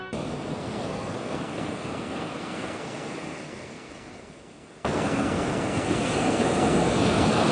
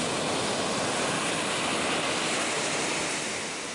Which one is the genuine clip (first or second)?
second